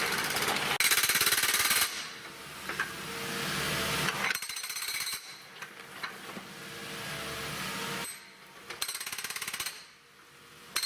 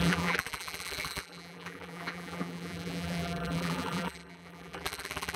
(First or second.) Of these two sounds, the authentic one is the first